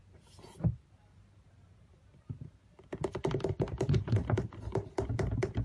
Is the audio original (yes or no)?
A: no